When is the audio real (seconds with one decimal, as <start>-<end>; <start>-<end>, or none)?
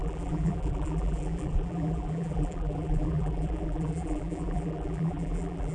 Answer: none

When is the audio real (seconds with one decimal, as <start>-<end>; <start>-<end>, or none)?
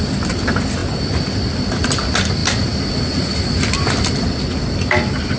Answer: 0.0-5.4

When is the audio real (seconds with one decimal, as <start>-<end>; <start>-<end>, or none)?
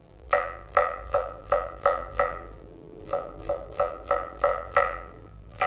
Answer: none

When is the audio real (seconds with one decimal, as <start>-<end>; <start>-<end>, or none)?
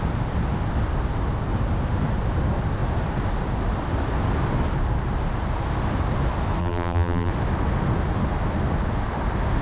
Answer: 0.0-6.6; 7.3-9.6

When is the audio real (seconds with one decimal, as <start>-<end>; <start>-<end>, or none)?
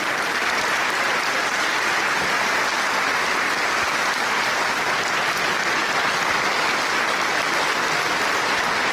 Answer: 0.0-8.9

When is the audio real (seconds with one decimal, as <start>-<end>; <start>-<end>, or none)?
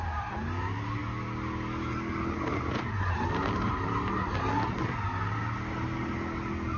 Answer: 0.0-6.8